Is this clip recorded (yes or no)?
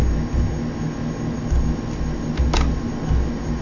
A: yes